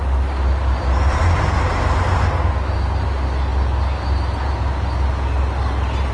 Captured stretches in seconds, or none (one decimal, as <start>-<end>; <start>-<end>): 0.0-6.1